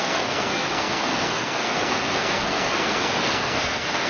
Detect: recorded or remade remade